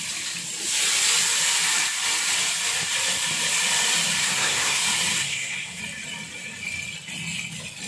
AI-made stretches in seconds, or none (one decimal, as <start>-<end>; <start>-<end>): 4.2-4.8; 5.2-5.8